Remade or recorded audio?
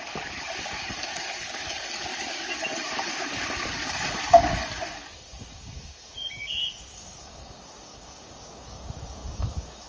remade